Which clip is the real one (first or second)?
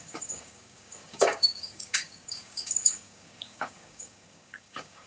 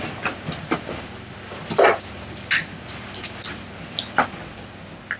second